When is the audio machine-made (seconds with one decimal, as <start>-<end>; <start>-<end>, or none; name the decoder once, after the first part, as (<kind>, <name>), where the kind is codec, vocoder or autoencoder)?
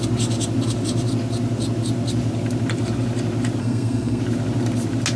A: 3.6-4.2 (codec, SNAC)